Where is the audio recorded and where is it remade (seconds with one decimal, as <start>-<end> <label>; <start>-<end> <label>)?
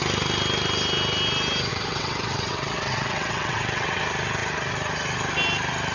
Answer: 0.0-1.7 recorded; 1.7-4.0 remade; 4.0-5.9 recorded